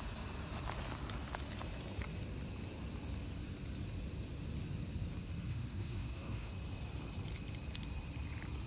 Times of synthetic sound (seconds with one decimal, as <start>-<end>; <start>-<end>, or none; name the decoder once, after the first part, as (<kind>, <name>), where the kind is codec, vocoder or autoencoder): 5.5-6.5 (codec, SNAC)